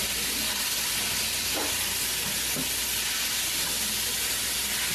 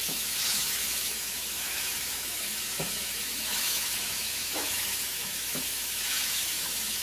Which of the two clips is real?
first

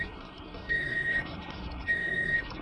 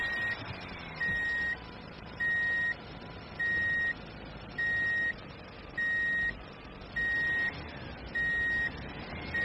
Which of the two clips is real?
second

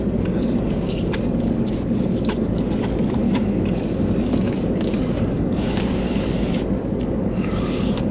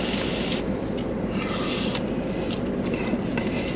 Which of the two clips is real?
second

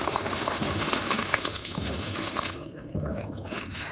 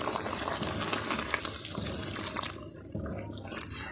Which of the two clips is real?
second